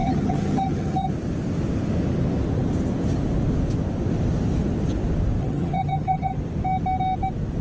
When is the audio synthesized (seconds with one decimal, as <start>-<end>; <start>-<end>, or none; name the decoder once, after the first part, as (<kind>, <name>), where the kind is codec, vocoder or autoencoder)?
0.0-1.1 (vocoder, HiFi-GAN); 5.4-6.4